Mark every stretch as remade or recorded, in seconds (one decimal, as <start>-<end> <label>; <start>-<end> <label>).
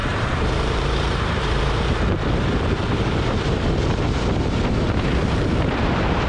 0.0-3.8 remade; 3.8-5.1 recorded; 5.1-6.3 remade